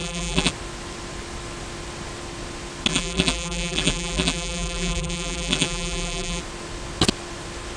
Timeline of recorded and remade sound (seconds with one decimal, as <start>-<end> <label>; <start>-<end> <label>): 0.0-0.5 remade; 0.5-2.9 recorded; 2.9-6.4 remade; 6.4-7.8 recorded